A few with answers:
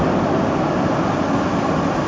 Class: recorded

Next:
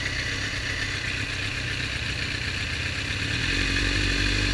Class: recorded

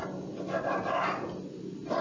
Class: recorded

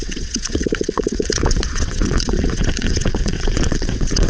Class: remade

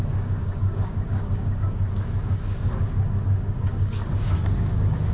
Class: remade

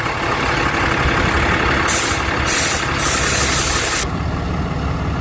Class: recorded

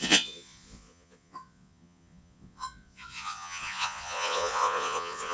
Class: remade